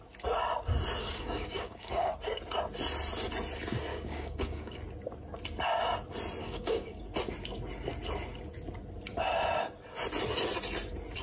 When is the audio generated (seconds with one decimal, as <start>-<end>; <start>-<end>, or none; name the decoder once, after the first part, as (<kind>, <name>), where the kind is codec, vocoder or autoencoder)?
1.0-2.1 (codec, DAC); 3.9-4.8; 6.4-7.0